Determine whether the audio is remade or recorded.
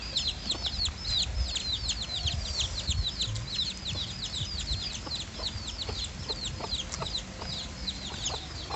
recorded